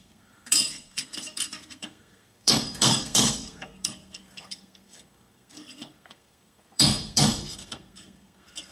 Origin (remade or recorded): remade